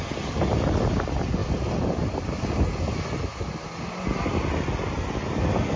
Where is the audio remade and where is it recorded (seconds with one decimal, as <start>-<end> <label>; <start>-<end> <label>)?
0.0-5.8 recorded